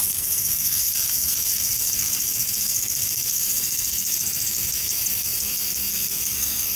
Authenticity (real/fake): fake